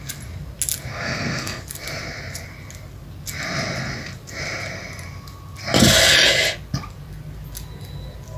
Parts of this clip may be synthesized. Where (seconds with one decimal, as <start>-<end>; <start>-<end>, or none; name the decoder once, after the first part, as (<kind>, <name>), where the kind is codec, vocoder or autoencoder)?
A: 0.9-1.6 (codec, SNAC)